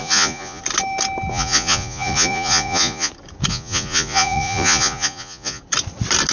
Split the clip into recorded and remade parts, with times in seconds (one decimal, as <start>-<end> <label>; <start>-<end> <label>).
0.0-0.6 remade; 0.6-1.3 recorded; 1.3-3.1 remade; 3.1-3.5 recorded; 3.5-5.6 remade; 5.6-6.3 recorded